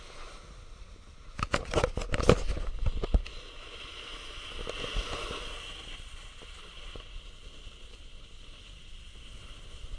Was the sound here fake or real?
real